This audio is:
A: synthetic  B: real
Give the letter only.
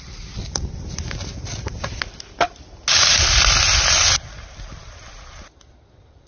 B